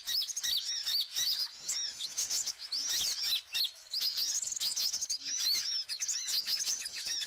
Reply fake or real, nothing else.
fake